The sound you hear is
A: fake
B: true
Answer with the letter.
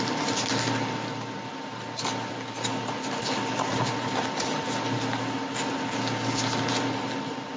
B